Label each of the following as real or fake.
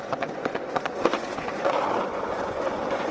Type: fake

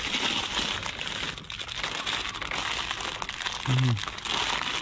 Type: real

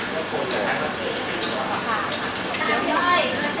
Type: real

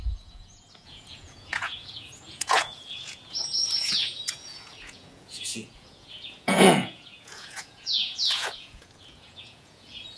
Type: fake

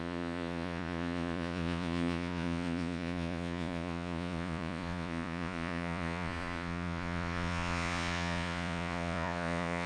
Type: fake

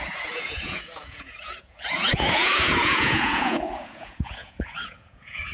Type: fake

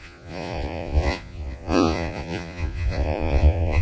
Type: fake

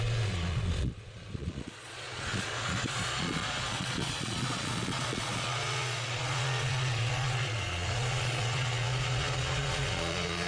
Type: fake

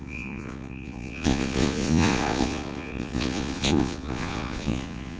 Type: fake